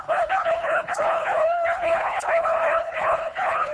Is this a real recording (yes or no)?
no